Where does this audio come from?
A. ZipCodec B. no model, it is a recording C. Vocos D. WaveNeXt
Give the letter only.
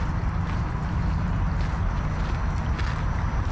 B